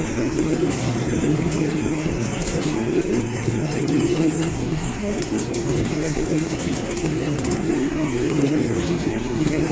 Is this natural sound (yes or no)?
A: no